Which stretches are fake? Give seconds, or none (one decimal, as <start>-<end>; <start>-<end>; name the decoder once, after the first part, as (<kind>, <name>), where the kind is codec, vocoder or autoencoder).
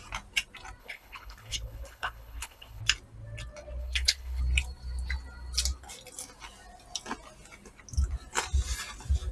0.8-2.8 (codec, HILCodec); 3.8-4.4